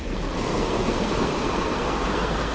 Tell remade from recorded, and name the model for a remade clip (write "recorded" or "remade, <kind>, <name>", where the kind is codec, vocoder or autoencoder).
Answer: remade, codec, SNAC